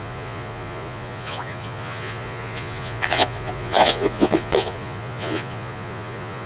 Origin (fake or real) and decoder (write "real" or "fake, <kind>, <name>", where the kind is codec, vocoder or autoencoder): fake, vocoder, Vocos